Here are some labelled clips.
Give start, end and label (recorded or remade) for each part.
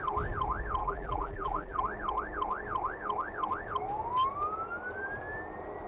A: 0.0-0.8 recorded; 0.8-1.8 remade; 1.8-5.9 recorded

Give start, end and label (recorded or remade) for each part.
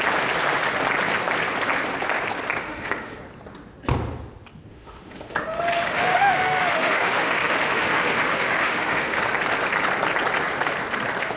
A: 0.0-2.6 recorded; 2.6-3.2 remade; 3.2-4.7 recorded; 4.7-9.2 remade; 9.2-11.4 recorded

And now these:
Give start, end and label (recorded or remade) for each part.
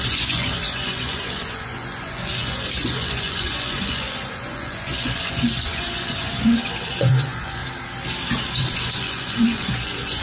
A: 0.0-7.6 remade; 7.6-8.5 recorded; 8.5-10.2 remade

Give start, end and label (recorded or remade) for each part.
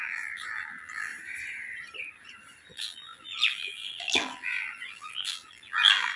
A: 0.0-1.1 remade; 1.1-2.7 recorded; 2.7-6.2 remade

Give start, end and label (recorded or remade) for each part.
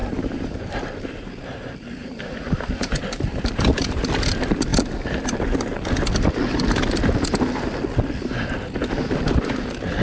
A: 0.0-3.4 remade; 3.4-10.0 recorded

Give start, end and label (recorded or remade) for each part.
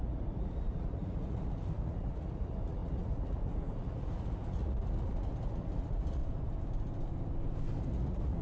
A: 0.0-6.2 remade; 6.2-7.9 recorded; 7.9-8.4 remade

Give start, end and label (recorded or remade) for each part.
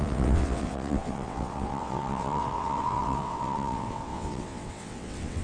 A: 0.0-5.4 remade